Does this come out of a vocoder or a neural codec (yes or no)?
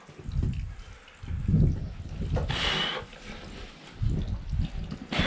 no